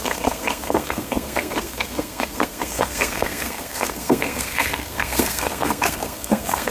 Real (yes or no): no